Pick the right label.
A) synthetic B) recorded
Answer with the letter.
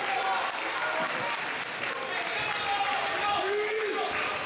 B